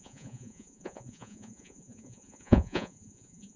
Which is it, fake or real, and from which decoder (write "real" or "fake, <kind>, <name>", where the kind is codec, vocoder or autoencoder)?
fake, vocoder, Vocos